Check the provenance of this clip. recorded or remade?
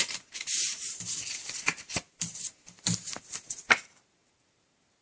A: remade